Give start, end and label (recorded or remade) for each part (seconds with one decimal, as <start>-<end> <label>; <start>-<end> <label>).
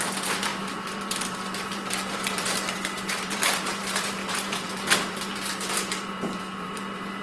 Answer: 0.0-7.2 remade